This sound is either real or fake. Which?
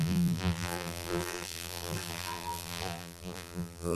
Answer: fake